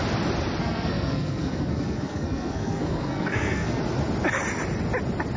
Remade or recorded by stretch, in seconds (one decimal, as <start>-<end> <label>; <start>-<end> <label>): 0.0-0.6 recorded; 0.6-3.8 remade; 3.8-5.4 recorded